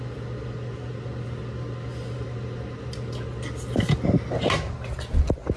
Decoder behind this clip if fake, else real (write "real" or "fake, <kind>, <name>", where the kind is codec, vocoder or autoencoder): real